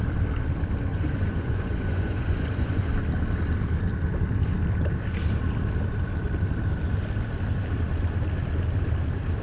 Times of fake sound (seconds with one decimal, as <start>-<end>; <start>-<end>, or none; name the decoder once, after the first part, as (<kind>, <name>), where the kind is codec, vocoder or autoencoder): 0.9-2.9 (vocoder, Vocos)

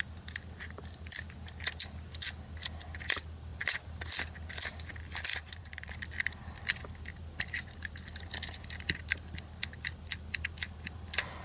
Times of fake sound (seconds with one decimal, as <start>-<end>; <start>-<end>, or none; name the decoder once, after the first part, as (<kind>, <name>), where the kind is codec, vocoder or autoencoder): 3.5-4.0 (vocoder, BigVGAN v2); 5.3-5.9

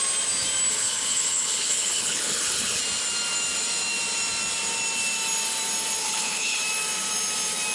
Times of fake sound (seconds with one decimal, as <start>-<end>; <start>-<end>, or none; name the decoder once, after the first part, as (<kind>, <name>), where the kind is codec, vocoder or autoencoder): 0.7-2.8 (codec, HILCodec); 6.0-6.6

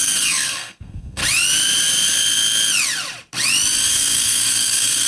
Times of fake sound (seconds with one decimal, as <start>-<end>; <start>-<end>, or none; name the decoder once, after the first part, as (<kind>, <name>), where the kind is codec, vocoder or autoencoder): 0.0-1.2 (codec, SNAC); 3.9-5.1

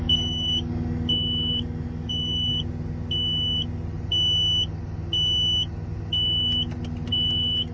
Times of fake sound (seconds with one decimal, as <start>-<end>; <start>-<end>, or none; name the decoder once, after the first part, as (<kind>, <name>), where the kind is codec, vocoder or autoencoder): 0.0-2.5 (codec, DAC); 7.1-7.7

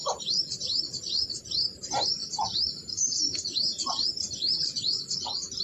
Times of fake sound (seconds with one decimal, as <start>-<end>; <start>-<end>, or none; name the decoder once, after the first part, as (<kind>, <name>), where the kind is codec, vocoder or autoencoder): 0.0-0.8 (vocoder, BigVGAN v2); 2.2-5.6

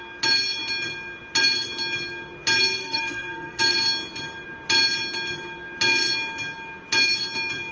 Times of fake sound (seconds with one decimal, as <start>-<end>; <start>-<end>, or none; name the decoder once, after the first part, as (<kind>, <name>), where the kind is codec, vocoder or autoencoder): 2.8-3.6 (codec, SNAC)

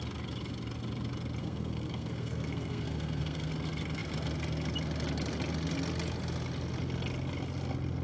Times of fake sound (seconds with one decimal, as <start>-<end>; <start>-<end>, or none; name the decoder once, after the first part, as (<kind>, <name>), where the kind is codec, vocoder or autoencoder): 1.4-3.5 (codec, SNAC)